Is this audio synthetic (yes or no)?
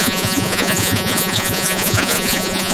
yes